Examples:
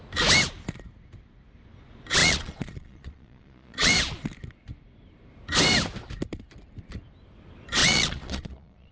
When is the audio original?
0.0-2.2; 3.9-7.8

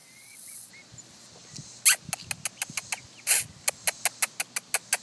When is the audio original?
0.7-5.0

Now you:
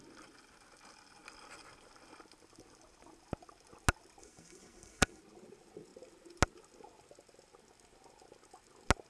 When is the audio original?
0.0-4.2; 5.2-9.1

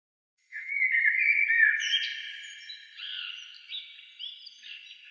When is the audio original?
0.7-5.1